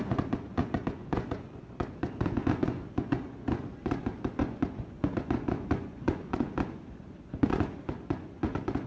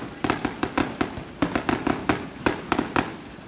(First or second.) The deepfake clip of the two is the first